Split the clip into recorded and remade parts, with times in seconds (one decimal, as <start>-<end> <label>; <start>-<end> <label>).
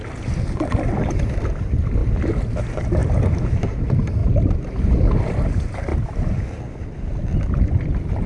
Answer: 0.0-2.0 recorded; 2.0-2.6 remade; 2.6-5.9 recorded; 5.9-6.4 remade; 6.4-8.3 recorded